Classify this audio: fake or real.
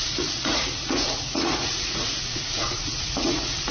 fake